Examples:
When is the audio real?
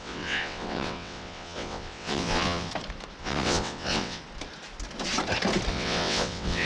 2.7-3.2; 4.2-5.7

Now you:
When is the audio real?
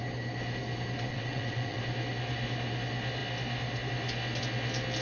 0.0-1.1; 1.8-5.0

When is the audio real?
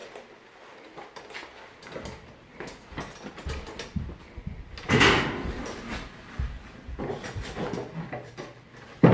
0.0-9.1